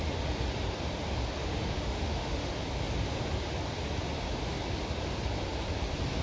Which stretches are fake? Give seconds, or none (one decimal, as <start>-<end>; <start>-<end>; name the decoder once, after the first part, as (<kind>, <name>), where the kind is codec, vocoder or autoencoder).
1.4-2.5 (autoencoder, DAC-VAE)